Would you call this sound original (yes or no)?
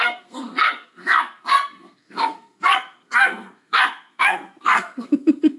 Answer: no